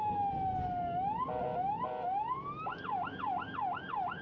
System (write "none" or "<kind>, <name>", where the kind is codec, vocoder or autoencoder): none